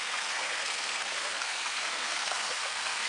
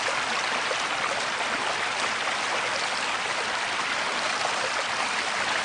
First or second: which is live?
second